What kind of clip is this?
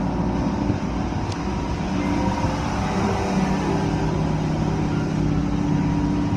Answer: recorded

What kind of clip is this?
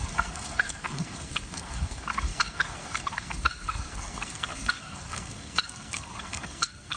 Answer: remade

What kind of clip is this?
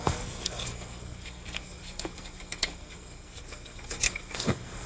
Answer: remade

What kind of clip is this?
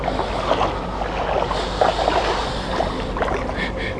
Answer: recorded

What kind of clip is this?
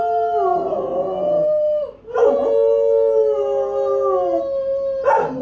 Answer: recorded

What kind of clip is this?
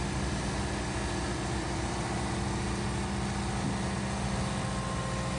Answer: recorded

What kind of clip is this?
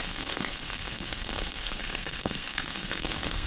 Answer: remade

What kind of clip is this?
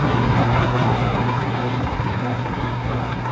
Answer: remade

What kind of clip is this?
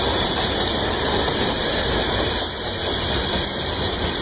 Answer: recorded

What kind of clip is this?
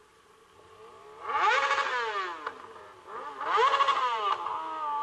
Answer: recorded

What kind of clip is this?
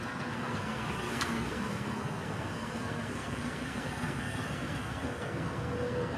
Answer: remade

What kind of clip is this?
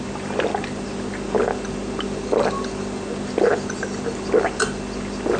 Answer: recorded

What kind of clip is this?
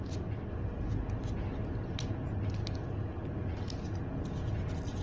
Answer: recorded